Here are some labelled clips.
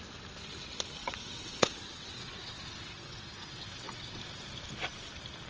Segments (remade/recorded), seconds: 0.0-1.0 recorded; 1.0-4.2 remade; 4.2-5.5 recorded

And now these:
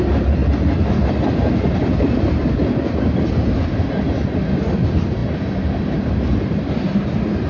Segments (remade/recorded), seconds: 0.0-7.5 recorded

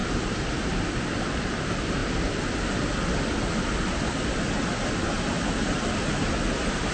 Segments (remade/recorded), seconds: 0.0-6.9 recorded